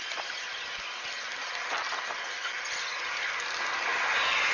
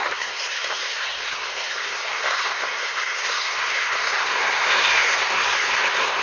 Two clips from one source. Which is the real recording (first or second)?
first